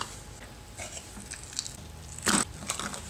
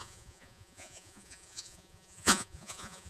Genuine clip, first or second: first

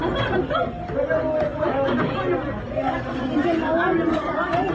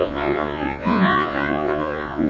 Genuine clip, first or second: first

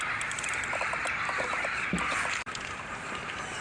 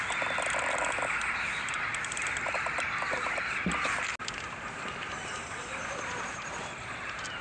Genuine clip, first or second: second